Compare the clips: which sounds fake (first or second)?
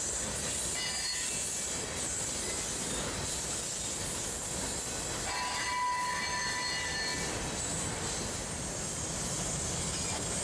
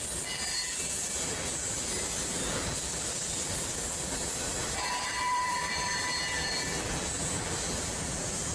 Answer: second